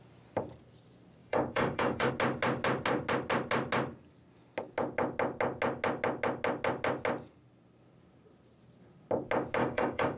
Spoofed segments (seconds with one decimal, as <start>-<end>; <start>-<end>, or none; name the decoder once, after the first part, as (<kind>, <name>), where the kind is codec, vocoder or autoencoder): 1.2-2.1 (codec, DAC); 9.6-10.2